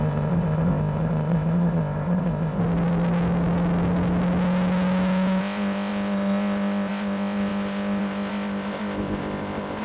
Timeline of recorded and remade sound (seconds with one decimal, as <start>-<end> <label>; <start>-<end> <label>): 0.0-2.6 remade; 2.6-5.4 recorded; 5.4-9.8 remade